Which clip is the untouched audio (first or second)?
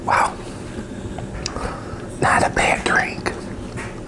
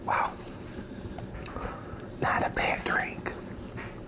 first